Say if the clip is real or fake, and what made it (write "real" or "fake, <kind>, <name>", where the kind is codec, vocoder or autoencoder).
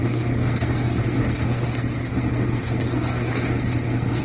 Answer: fake, codec, SNAC